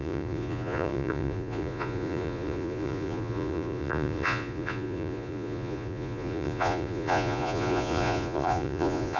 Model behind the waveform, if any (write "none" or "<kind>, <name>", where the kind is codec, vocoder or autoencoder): vocoder, Vocos